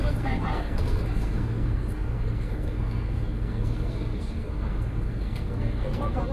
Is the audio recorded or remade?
remade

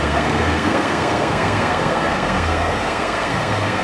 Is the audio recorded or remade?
remade